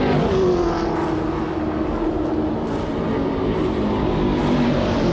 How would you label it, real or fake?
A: real